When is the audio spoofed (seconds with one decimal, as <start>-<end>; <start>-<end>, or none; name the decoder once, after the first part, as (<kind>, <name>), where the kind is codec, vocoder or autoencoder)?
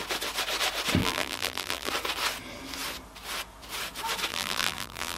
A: 1.0-1.9 (vocoder, BigVGAN v2); 4.3-5.2